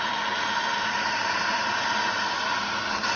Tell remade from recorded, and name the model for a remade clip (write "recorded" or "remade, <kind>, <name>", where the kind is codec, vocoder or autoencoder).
recorded